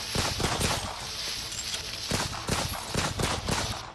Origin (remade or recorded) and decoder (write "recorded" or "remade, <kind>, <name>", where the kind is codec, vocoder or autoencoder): recorded